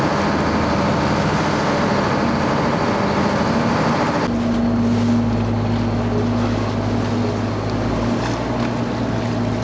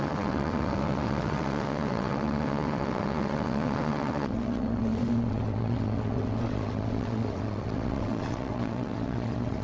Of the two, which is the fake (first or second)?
second